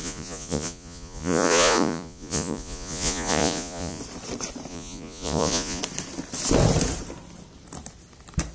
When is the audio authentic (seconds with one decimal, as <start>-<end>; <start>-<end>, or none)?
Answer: 4.0-4.7; 5.8-8.5